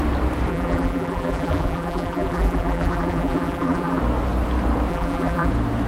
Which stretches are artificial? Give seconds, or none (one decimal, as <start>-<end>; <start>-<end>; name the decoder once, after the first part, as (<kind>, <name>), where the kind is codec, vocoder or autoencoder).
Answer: 0.5-4.0 (vocoder, BigVGAN v2); 4.9-5.5